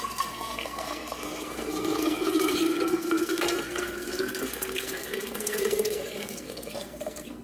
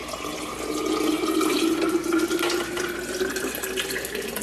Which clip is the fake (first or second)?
first